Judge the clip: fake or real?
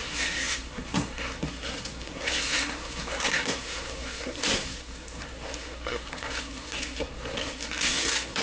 fake